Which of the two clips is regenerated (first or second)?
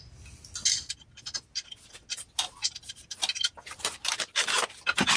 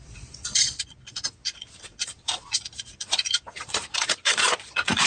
second